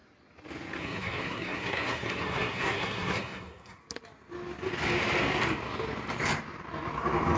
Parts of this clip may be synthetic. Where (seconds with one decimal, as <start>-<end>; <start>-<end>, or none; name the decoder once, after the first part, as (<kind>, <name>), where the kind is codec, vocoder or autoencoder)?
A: 0.8-3.8 (codec, SNAC)